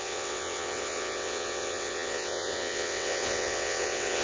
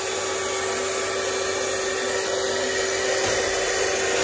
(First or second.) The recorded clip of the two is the second